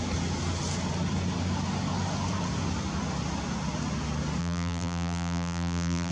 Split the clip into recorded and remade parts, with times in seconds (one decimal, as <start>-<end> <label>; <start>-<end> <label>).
0.0-4.4 recorded; 4.4-6.1 remade